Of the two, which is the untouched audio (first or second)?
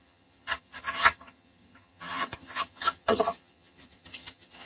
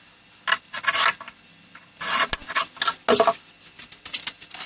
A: second